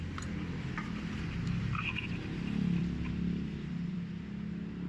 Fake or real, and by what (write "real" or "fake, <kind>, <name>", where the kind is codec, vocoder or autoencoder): fake, vocoder, BigVGAN v2